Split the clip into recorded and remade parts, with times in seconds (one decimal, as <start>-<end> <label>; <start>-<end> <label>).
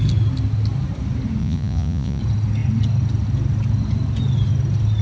0.0-1.4 recorded; 1.4-2.2 remade; 2.2-5.0 recorded